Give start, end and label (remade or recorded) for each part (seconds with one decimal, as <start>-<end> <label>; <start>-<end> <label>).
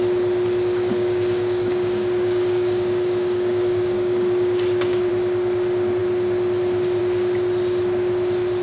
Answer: 0.0-0.9 recorded; 0.9-5.1 remade; 5.1-8.6 recorded